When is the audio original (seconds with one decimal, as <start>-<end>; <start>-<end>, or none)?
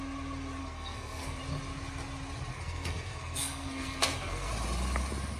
0.0-0.6; 1.4-2.5; 4.5-5.4